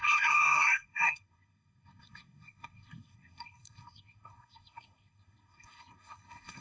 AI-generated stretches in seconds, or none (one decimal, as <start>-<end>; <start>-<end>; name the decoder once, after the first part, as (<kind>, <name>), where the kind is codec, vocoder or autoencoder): 0.0-6.6 (codec, SNAC)